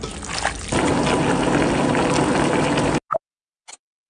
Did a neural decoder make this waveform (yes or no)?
no